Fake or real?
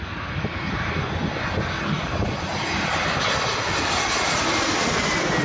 real